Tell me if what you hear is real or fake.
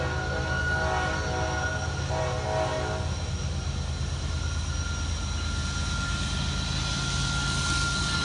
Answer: real